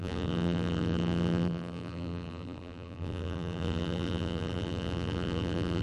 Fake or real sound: fake